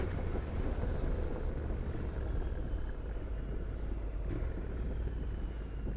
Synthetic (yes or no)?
no